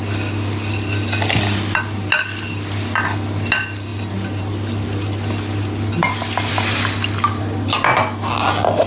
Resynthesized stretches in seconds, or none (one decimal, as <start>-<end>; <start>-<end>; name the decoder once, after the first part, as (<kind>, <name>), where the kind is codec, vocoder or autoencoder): none